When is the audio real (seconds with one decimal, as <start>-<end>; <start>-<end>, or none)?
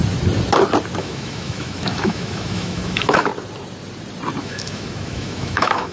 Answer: 0.0-1.0; 3.3-4.4